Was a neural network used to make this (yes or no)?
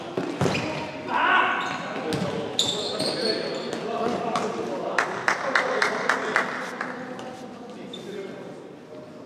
no